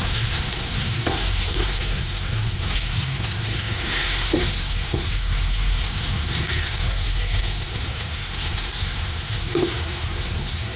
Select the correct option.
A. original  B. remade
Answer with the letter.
B